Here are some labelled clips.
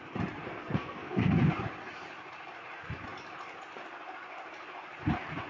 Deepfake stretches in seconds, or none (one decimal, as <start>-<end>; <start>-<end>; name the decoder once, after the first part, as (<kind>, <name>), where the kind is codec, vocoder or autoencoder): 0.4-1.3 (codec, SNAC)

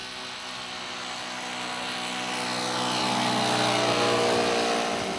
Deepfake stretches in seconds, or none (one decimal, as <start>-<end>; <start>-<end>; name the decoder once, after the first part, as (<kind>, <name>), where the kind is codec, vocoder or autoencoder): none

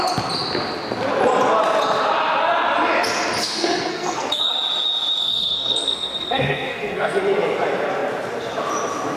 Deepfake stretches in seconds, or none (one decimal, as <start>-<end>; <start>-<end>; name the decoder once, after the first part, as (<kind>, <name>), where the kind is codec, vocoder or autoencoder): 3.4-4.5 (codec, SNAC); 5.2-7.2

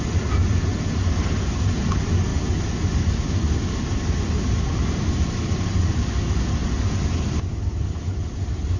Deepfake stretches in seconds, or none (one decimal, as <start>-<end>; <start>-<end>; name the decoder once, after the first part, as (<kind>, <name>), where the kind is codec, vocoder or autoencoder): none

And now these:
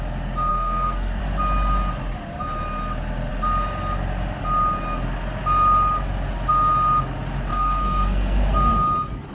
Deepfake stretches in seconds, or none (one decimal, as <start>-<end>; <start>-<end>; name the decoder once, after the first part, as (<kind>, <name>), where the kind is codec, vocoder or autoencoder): 0.5-1.2 (codec, SNAC); 7.5-8.7

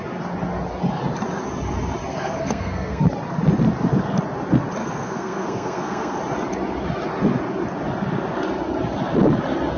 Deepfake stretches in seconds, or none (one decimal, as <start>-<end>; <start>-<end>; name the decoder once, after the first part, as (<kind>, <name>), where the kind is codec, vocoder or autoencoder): 2.1-3.0 (codec, SNAC); 4.8-6.2